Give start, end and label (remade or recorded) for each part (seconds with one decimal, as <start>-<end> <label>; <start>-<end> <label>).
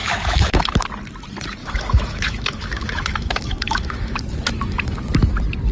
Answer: 0.0-0.7 remade; 0.7-1.6 recorded; 1.6-4.2 remade; 4.2-5.7 recorded